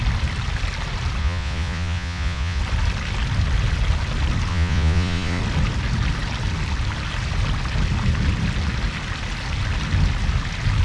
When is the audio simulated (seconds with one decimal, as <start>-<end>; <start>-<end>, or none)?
1.2-2.6; 4.5-5.4